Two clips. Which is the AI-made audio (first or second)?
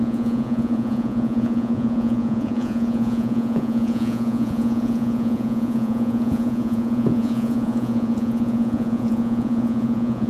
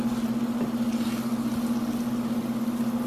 first